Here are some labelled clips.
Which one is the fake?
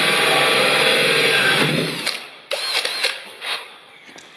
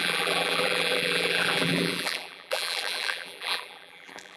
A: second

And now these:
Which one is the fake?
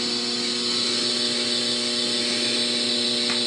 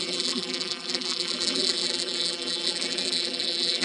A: second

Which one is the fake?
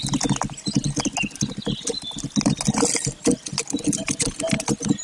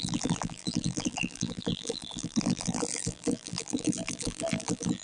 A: second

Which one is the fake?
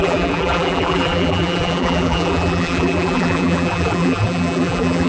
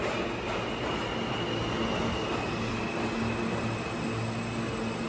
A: first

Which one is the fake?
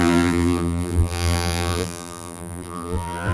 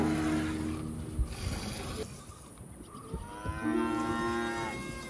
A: first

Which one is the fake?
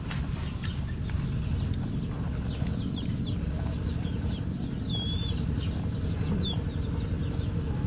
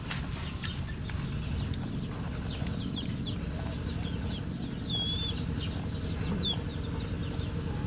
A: first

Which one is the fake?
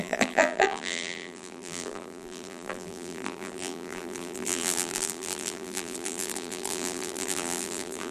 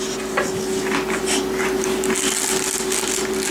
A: first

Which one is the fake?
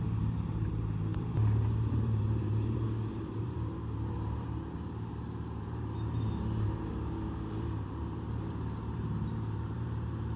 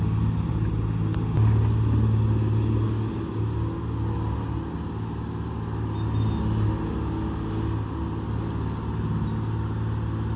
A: first